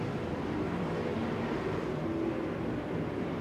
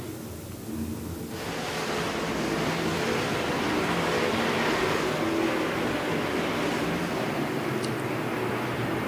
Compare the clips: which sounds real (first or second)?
second